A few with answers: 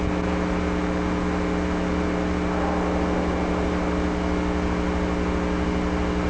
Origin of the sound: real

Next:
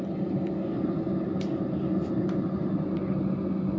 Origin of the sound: real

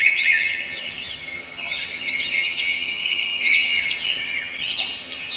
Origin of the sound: fake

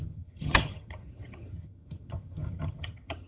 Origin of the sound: fake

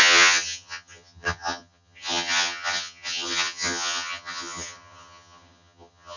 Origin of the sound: fake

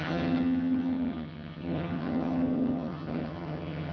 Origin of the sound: fake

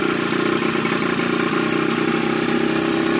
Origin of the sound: real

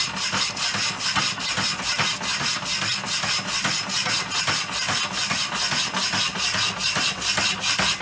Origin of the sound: real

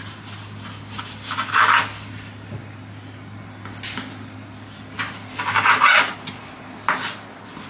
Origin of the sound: real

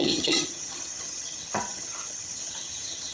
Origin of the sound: fake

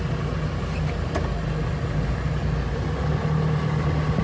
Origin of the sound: real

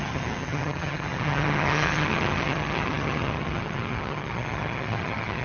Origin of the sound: fake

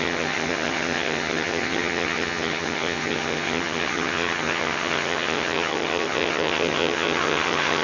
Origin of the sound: fake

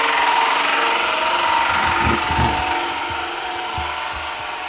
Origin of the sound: real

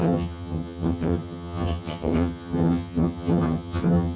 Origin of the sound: fake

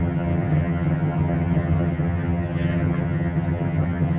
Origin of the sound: fake